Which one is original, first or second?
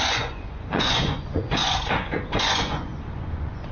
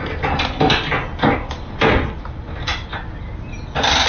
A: second